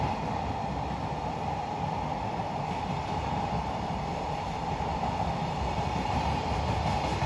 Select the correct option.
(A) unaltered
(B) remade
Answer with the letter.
A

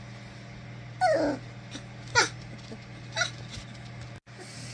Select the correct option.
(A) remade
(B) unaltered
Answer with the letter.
B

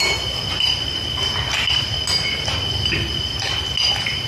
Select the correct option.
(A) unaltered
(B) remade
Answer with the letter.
A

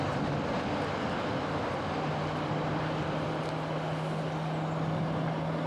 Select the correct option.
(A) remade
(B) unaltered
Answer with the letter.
B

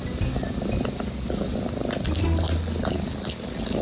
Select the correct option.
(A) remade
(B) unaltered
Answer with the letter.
B